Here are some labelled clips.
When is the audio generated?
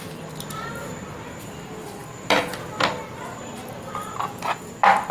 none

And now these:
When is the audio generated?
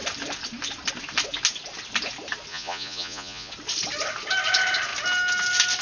2.5-3.5 (vocoder, Vocos)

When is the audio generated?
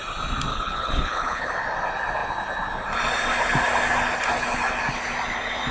0.5-1.5 (codec, HILCodec)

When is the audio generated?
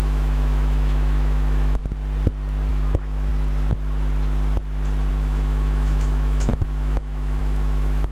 0.0-1.8 (autoencoder, DAC-VAE); 2.7-3.3; 5.1-8.1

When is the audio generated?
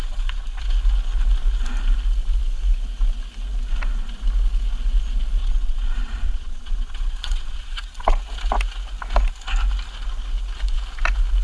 0.0-0.6 (vocoder, Vocos); 5.4-8.2